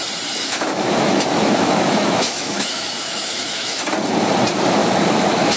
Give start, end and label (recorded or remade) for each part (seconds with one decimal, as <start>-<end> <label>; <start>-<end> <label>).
0.0-0.4 recorded; 0.4-3.8 remade; 3.8-4.8 recorded; 4.8-5.6 remade